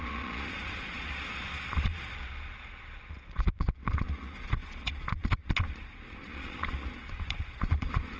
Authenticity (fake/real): fake